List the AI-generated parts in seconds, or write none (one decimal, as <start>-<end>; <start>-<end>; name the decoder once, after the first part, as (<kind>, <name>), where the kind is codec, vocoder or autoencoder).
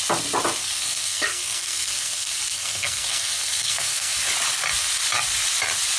0.6-4.2 (codec, SNAC)